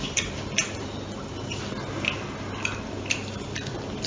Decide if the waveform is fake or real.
real